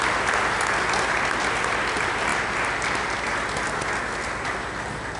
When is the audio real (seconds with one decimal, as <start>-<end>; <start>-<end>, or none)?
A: 0.0-5.2